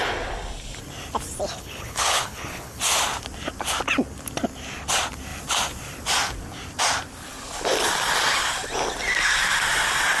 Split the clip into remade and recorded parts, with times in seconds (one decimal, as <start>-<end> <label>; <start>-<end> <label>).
0.0-1.6 recorded; 1.6-2.8 remade; 2.8-10.2 recorded